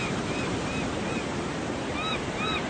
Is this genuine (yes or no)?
no